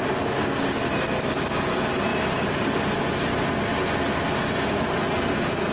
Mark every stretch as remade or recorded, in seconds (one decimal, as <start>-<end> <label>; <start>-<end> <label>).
0.0-2.1 recorded; 2.1-2.7 remade; 2.7-5.7 recorded